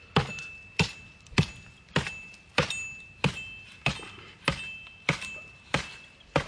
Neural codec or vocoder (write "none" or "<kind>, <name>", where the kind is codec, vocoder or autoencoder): none